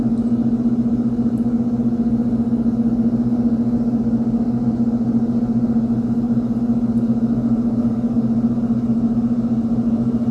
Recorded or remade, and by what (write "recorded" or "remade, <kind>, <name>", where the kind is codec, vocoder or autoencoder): recorded